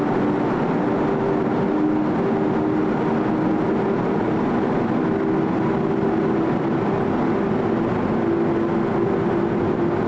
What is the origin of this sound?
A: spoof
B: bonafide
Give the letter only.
B